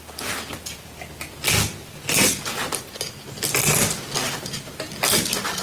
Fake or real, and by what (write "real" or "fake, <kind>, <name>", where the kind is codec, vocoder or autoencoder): real